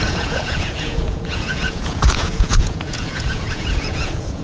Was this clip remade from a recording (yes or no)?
yes